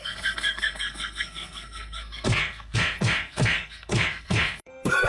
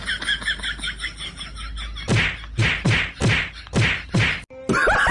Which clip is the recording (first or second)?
second